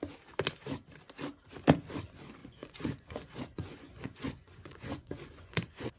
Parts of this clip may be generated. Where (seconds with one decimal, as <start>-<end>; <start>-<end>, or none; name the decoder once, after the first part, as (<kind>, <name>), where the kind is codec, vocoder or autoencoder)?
2.4-6.0 (vocoder, Vocos)